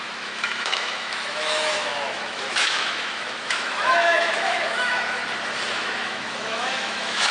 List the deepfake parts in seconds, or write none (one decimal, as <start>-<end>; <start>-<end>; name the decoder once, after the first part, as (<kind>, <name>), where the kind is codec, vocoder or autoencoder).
0.0-5.2 (autoencoder, DAC-VAE); 5.7-7.3